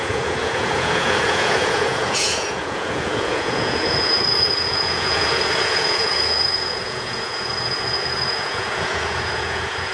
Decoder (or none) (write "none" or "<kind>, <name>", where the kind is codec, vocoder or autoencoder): vocoder, Vocos